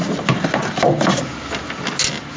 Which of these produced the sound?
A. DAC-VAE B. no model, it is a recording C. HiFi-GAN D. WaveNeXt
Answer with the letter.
B